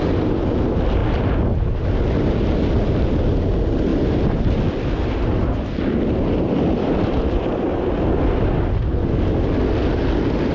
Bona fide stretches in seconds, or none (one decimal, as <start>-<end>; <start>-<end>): 0.0-10.5